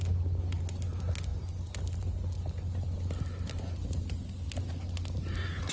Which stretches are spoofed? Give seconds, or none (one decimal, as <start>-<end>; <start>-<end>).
none

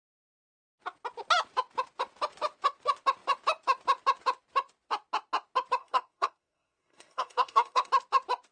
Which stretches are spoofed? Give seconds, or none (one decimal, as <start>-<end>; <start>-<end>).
5.8-7.9

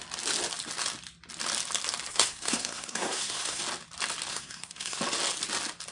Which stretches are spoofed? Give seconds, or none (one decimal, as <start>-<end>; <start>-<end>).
2.1-3.6; 4.3-5.0

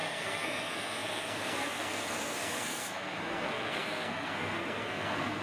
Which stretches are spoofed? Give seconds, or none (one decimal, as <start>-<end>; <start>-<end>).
0.0-5.4

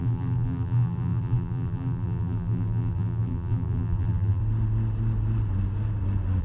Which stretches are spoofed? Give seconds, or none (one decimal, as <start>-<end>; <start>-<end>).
0.0-4.4

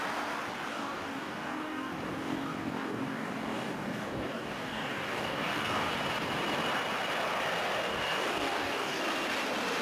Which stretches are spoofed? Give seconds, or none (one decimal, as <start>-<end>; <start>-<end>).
0.7-5.9; 7.9-9.0

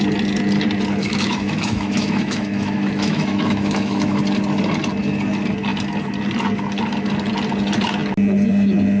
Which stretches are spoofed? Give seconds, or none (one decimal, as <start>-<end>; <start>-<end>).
1.0-4.2

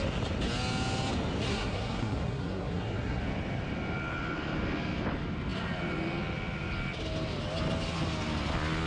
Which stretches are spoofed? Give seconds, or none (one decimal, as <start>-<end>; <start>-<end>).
1.5-3.2